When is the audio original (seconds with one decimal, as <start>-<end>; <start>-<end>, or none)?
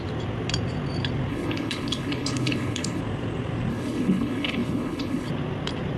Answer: 0.0-1.3; 3.0-3.7; 5.3-6.0